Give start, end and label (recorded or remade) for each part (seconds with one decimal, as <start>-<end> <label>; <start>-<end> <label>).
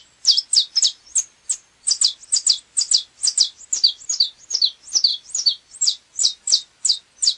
0.0-5.1 recorded; 5.1-6.4 remade; 6.4-7.4 recorded